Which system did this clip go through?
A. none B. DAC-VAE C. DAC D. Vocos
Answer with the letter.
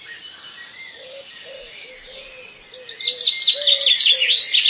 A